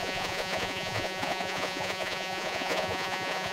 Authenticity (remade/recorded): remade